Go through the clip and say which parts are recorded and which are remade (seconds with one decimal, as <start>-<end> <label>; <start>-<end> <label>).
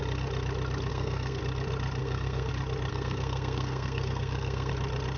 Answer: 0.0-0.9 recorded; 0.9-1.4 remade; 1.4-2.0 recorded; 2.0-2.5 remade; 2.5-2.9 recorded; 2.9-4.7 remade; 4.7-5.2 recorded